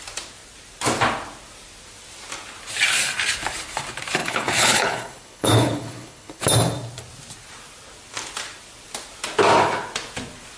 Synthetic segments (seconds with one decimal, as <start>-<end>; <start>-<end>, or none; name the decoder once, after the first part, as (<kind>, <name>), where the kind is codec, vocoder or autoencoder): 4.2-6.4 (codec, HILCodec)